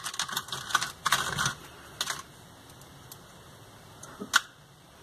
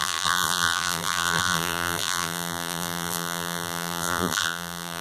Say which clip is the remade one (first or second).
second